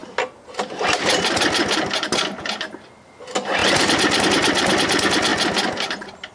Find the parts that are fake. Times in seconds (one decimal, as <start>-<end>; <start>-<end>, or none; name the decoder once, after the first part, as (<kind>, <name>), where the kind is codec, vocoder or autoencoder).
none